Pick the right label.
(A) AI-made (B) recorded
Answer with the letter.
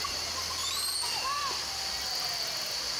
B